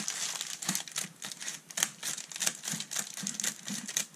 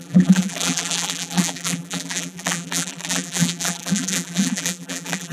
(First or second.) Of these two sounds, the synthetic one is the second